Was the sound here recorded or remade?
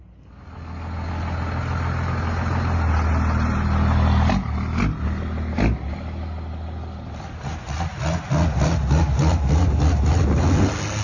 recorded